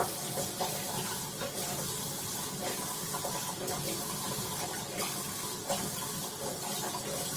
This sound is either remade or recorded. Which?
recorded